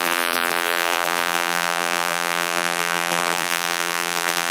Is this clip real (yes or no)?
no